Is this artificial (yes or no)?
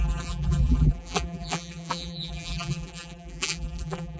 yes